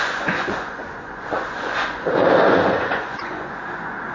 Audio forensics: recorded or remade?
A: remade